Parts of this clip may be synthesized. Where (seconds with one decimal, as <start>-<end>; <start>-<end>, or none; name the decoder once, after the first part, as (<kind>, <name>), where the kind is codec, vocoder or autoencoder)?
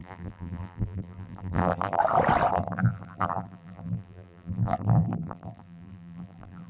0.0-2.0 (vocoder, BigVGAN v2); 2.5-6.7